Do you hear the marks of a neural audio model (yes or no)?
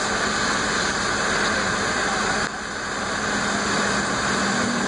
no